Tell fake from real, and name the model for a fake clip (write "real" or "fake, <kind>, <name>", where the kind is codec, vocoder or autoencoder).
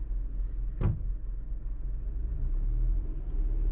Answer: real